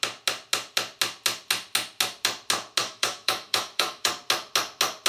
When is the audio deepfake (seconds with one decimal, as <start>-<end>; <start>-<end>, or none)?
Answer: 2.8-4.1